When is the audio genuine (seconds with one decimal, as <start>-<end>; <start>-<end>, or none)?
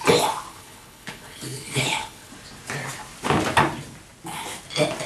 0.0-0.5; 2.3-5.1